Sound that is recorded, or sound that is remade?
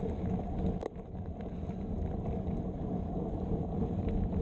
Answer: recorded